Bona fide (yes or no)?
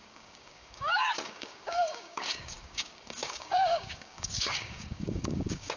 no